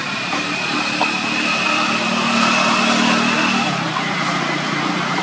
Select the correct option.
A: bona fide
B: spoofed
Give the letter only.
A